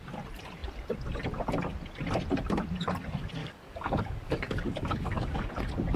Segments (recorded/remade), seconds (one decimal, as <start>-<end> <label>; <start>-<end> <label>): 0.0-3.4 recorded; 3.4-5.5 remade; 5.5-6.0 recorded